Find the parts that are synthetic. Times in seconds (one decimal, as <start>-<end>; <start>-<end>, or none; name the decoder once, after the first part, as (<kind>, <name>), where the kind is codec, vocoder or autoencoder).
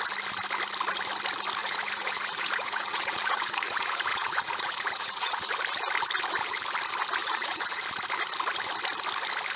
1.6-5.5 (vocoder, Vocos); 7.2-7.8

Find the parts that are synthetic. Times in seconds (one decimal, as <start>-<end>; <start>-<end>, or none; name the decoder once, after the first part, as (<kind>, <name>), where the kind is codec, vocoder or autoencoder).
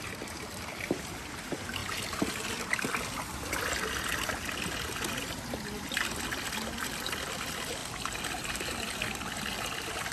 0.0-1.8 (vocoder, BigVGAN v2); 6.8-10.1